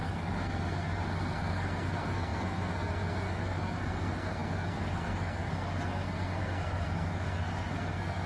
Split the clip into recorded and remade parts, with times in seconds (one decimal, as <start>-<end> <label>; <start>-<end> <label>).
0.0-8.3 remade